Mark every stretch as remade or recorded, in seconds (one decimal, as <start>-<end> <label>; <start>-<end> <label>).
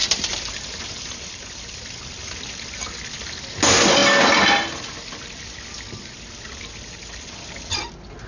0.0-2.0 remade; 2.0-8.3 recorded